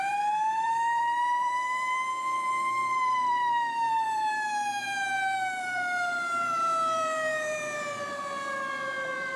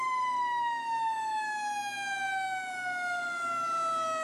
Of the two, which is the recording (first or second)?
second